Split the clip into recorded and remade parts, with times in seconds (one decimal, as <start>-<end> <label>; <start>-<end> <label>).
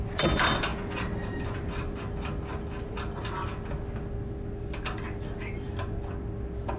0.0-6.8 recorded